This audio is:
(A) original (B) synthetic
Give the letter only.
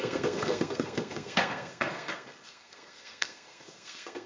B